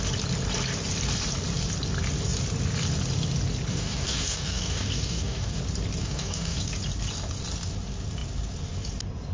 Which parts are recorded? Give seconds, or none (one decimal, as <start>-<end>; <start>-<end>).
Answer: 0.0-3.7; 5.6-6.0; 6.7-9.3